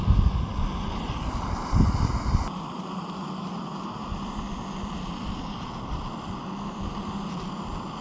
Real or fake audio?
fake